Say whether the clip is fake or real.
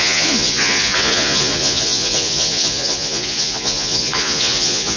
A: fake